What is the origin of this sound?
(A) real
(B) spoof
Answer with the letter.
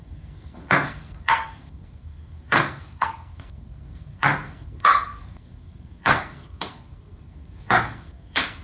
B